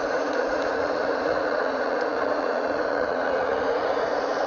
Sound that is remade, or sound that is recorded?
remade